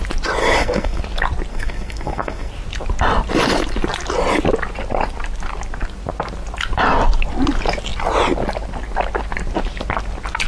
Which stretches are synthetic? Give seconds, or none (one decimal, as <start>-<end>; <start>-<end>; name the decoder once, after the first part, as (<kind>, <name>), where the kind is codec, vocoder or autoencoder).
0.4-1.0 (codec, SNAC); 1.5-2.5

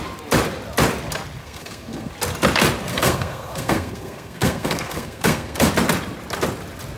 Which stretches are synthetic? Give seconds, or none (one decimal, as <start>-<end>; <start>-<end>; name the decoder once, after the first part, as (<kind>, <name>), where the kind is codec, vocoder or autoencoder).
1.4-2.1 (codec, SNAC); 2.9-5.7